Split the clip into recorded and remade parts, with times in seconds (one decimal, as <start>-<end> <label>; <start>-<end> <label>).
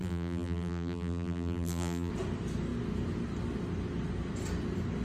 0.0-2.1 remade; 2.1-5.0 recorded